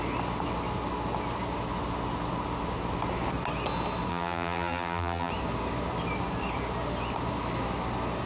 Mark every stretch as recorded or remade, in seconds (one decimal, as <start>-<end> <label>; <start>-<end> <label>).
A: 0.0-4.1 recorded; 4.1-5.3 remade; 5.3-8.3 recorded